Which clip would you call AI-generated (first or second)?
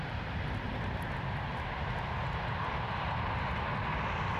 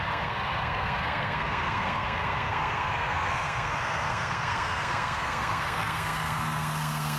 second